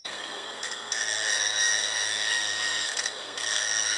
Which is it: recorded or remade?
remade